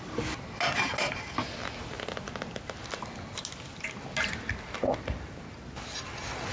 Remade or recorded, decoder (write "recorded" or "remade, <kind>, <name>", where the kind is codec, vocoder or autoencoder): recorded